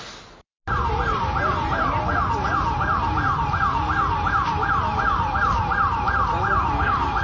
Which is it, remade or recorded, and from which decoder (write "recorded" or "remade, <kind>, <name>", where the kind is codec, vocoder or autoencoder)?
recorded